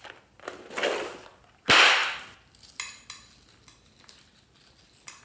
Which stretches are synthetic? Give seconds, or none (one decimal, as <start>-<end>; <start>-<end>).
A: none